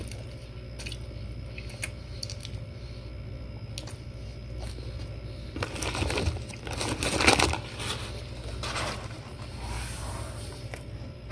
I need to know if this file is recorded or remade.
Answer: recorded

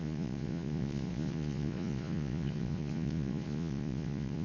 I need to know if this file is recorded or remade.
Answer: remade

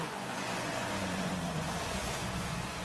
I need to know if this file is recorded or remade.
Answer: remade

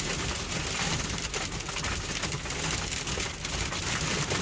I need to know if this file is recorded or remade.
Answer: recorded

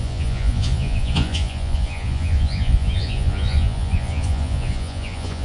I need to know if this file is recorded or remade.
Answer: remade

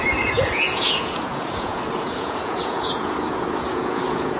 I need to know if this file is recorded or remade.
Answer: remade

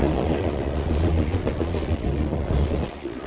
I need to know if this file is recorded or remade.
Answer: remade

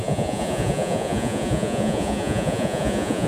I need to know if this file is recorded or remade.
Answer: remade